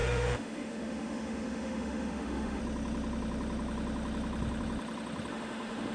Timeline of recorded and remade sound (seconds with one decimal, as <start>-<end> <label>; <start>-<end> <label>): 0.0-2.6 remade; 2.6-5.3 recorded; 5.3-5.9 remade